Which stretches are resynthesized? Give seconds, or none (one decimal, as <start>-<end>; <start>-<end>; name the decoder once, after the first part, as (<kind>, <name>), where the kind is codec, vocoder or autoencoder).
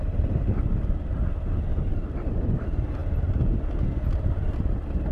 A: none